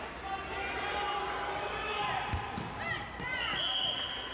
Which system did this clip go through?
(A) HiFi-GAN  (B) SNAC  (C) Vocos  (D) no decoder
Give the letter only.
D